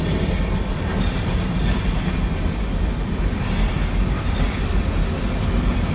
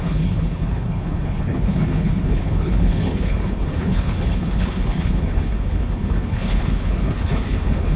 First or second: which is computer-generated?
second